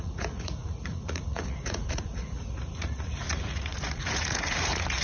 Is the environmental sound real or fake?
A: fake